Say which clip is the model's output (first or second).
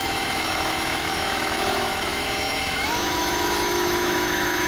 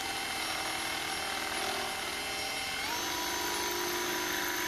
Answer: first